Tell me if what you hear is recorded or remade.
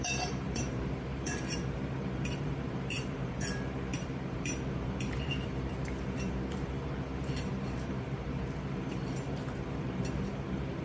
remade